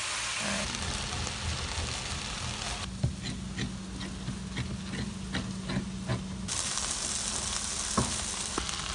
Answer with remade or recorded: recorded